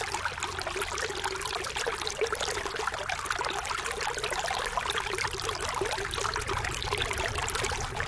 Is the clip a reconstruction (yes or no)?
no